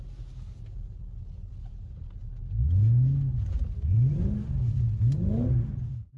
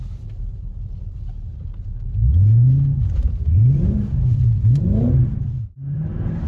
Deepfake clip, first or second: second